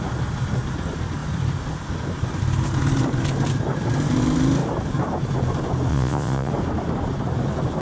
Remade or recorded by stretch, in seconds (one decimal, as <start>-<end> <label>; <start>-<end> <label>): 0.0-5.9 recorded; 5.9-6.5 remade; 6.5-7.8 recorded